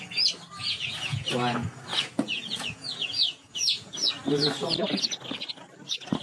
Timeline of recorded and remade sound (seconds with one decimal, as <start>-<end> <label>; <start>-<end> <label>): 0.0-0.6 recorded; 0.6-1.3 remade; 1.3-1.9 recorded; 1.9-4.1 remade; 4.1-6.2 recorded